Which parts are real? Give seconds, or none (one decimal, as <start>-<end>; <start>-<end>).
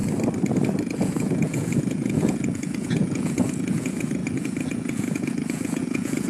0.0-0.8